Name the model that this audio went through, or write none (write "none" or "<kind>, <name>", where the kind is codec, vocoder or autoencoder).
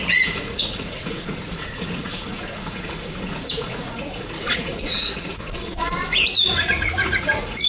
vocoder, Vocos